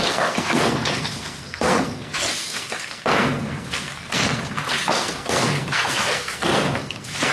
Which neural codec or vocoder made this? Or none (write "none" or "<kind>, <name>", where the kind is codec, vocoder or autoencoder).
codec, SNAC